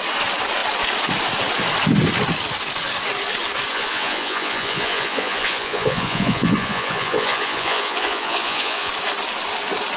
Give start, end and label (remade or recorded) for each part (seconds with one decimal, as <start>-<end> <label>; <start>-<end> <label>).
0.0-3.7 recorded; 3.7-8.9 remade; 8.9-10.0 recorded